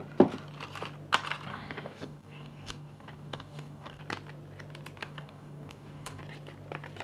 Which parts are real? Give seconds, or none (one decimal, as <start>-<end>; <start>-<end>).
0.0-1.5; 4.0-5.0; 6.2-7.0